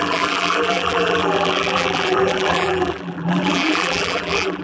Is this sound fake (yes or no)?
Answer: yes